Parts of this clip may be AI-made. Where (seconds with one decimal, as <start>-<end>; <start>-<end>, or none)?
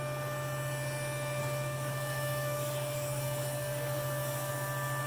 1.4-4.5